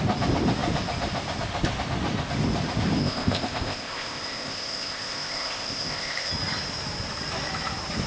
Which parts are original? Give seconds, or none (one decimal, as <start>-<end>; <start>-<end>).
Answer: 0.0-3.0; 6.3-8.1

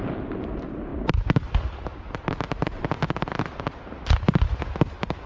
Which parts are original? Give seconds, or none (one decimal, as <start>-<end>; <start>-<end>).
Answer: 0.0-0.9; 1.5-1.9; 2.8-5.3

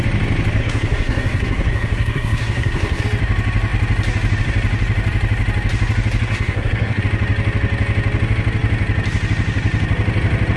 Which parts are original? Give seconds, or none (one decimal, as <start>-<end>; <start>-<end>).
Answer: 0.0-0.6; 3.0-6.3; 7.0-10.6

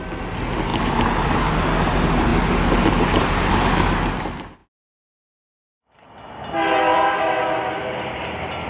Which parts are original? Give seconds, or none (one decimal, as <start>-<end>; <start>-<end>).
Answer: 0.0-4.6; 7.2-8.7

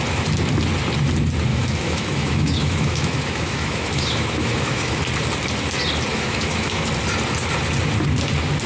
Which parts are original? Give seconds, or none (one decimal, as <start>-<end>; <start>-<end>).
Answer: 0.0-1.5; 5.0-6.1; 6.9-8.7

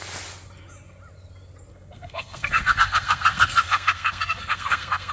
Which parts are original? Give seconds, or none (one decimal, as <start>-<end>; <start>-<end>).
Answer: 0.0-1.7